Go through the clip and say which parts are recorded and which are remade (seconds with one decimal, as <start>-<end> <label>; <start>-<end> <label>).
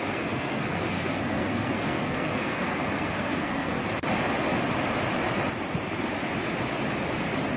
0.0-3.8 remade; 3.8-7.6 recorded